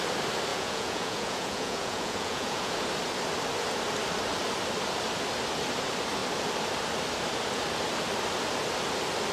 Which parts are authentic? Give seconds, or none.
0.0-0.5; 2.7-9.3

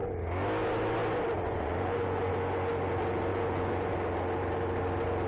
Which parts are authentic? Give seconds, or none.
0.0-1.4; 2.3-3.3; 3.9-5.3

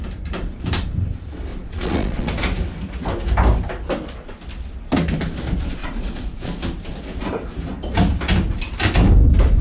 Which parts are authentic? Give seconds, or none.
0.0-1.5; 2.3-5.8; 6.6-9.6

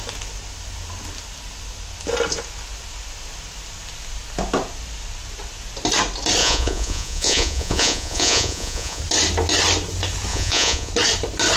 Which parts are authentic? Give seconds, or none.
0.0-6.4; 9.0-10.3; 10.9-11.6

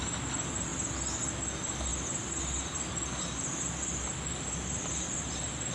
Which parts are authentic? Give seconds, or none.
0.0-5.7

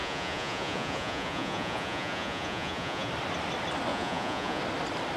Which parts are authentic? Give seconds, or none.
3.1-3.9; 4.6-5.2

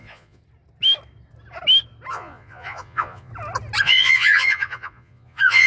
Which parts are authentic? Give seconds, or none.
0.4-2.1; 3.3-3.8

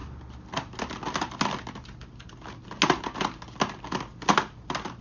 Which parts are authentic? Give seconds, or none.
0.0-5.0